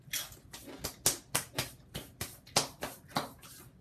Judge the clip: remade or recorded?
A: recorded